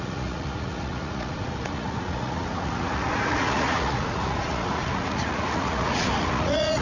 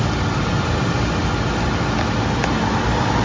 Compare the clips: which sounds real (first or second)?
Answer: second